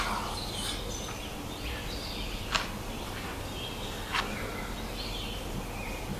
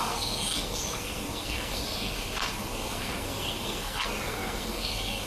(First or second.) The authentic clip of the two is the first